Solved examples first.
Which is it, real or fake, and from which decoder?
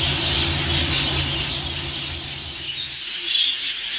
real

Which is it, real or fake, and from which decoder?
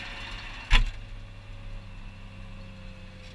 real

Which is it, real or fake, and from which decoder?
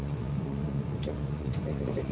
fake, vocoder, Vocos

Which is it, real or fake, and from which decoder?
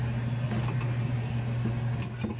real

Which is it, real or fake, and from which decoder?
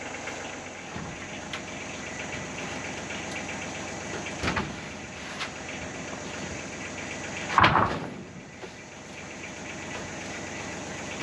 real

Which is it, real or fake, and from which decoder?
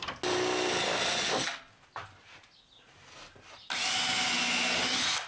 real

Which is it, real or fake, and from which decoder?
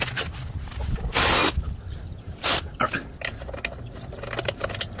real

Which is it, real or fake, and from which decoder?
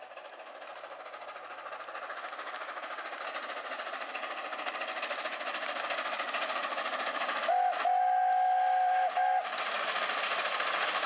real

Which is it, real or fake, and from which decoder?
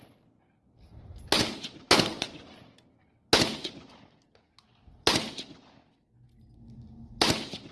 real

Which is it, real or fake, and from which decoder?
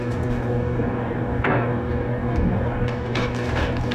fake, codec, DAC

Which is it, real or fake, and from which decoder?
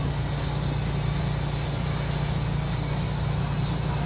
real